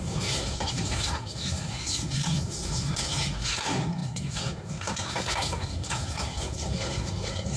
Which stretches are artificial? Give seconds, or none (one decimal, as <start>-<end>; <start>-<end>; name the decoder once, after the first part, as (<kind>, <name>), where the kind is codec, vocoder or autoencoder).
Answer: 0.0-7.6 (codec, SNAC)